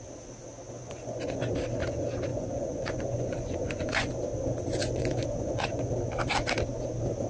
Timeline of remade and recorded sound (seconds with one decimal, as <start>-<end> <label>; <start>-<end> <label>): 0.0-0.8 recorded; 0.8-1.5 remade; 1.5-2.3 recorded; 2.3-4.1 remade; 4.1-4.8 recorded; 4.8-5.9 remade; 5.9-7.3 recorded